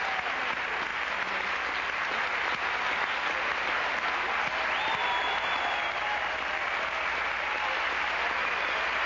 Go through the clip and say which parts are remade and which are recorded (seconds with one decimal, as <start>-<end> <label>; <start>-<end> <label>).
0.0-9.1 recorded